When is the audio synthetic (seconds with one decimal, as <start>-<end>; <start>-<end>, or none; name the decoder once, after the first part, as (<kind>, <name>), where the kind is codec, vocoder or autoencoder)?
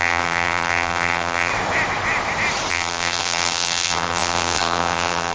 0.0-1.5 (vocoder, BigVGAN v2); 2.7-5.3